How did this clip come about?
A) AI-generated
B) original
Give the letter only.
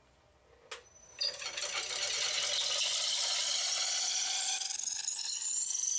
B